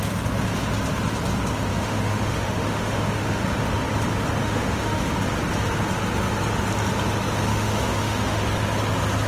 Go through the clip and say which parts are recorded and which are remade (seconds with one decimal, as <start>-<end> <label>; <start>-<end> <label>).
0.0-1.7 recorded; 1.7-3.4 remade; 3.4-4.4 recorded; 4.4-5.1 remade; 5.1-7.5 recorded; 7.5-8.4 remade; 8.4-9.3 recorded